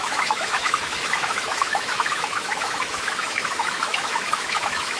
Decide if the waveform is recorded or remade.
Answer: remade